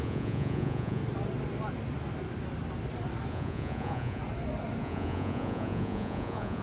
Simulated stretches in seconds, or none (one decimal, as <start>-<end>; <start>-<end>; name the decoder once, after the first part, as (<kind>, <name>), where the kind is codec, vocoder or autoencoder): 0.0-1.0 (vocoder, Vocos); 3.3-4.2; 4.8-6.6